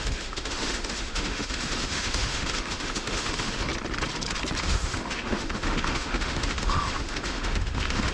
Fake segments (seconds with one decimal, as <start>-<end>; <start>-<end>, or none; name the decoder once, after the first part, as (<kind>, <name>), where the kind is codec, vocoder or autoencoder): 0.0-3.7 (autoencoder, DAC-VAE); 4.6-8.1